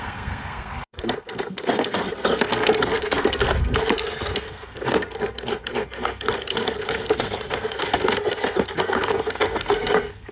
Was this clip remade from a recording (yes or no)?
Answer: yes